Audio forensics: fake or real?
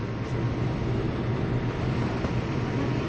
real